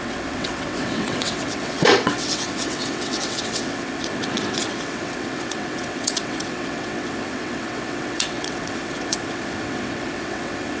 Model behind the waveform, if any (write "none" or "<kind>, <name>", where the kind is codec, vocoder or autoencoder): vocoder, WaveNeXt